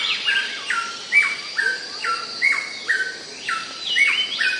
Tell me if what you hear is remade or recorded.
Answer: recorded